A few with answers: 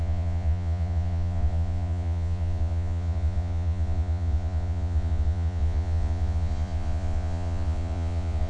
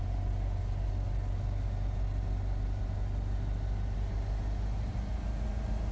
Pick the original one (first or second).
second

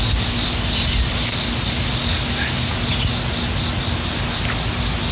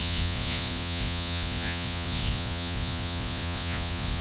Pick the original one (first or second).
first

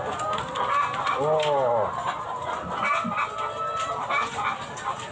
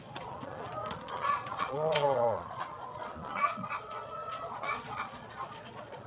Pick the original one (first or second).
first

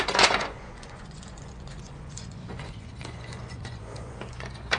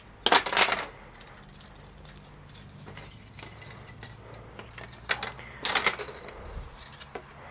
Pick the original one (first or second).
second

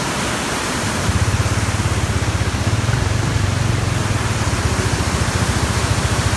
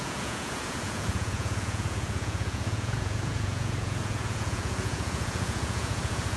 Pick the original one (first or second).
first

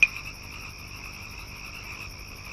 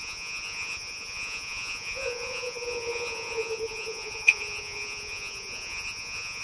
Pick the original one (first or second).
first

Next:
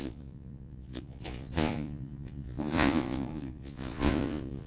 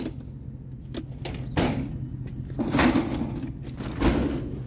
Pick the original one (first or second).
second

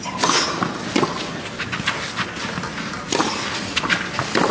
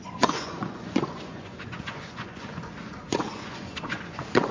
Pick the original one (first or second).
first